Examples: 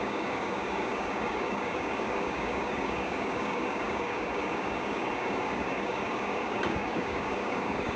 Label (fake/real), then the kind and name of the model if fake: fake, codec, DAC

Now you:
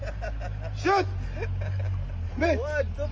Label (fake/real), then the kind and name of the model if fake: real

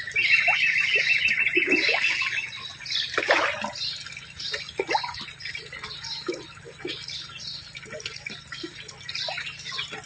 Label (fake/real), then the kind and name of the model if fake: real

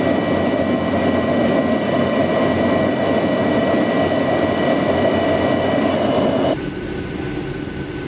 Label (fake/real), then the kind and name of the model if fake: real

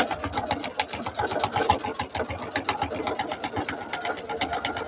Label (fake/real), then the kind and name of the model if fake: real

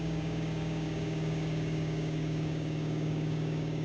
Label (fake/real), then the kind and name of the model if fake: fake, codec, DAC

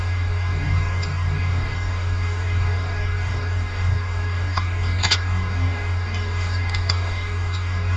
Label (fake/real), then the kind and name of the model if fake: fake, codec, DAC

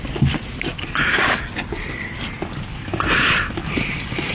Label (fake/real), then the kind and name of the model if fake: real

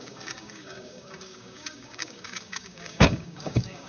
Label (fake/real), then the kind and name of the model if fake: fake, codec, DAC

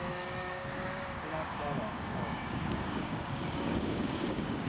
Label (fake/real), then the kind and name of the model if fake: fake, codec, DAC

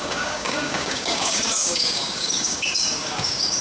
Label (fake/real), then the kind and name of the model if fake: fake, codec, DAC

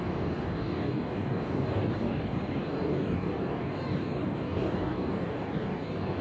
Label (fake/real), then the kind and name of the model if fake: fake, codec, DAC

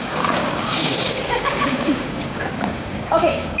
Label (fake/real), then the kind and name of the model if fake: fake, codec, DAC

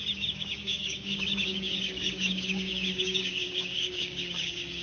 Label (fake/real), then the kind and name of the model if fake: fake, codec, DAC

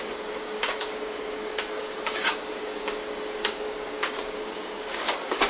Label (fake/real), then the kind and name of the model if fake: fake, codec, DAC